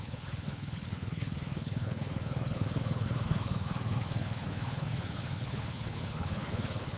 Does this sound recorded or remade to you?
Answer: remade